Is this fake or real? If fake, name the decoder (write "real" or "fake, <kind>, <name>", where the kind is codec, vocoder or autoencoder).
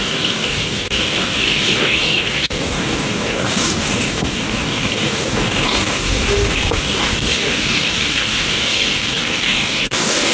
fake, codec, DAC